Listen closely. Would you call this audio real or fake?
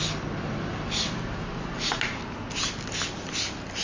real